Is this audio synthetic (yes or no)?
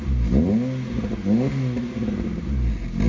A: no